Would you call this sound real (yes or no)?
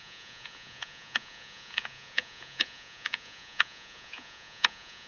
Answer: no